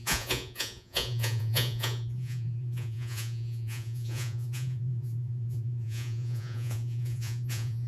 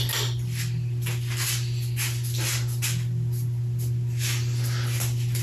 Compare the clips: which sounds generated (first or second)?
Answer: first